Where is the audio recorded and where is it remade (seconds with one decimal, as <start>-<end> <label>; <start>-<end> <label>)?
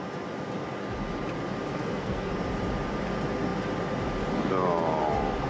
0.0-1.7 recorded; 1.7-2.3 remade; 2.3-5.5 recorded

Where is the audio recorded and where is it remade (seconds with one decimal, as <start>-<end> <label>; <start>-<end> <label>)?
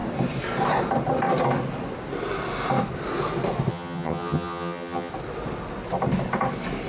0.0-3.7 recorded; 3.7-5.1 remade; 5.1-6.9 recorded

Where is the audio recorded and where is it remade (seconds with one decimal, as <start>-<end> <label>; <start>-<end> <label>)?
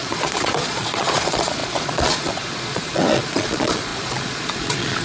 0.0-5.0 remade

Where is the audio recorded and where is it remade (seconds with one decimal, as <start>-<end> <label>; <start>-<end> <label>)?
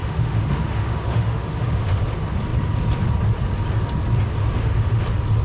0.0-2.0 remade; 2.0-4.4 recorded; 4.4-5.0 remade; 5.0-5.4 recorded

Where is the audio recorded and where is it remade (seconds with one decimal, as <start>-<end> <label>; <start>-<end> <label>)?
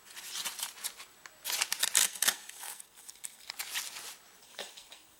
0.0-2.0 recorded; 2.0-3.5 remade; 3.5-4.4 recorded; 4.4-5.2 remade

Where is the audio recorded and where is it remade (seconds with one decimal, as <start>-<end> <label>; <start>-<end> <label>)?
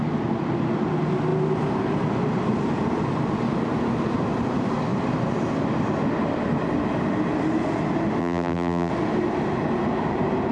0.0-8.2 recorded; 8.2-8.9 remade; 8.9-10.5 recorded